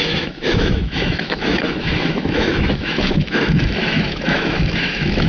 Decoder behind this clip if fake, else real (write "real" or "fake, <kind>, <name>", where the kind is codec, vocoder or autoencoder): fake, autoencoder, DAC-VAE